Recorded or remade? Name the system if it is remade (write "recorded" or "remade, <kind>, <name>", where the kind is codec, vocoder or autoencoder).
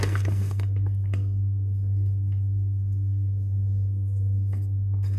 remade, codec, SNAC